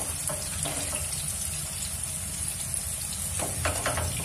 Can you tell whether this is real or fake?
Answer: real